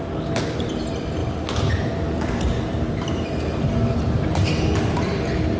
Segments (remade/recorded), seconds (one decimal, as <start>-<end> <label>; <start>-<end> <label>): 0.0-5.6 recorded